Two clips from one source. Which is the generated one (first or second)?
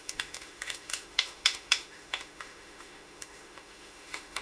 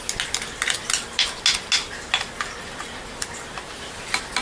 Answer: first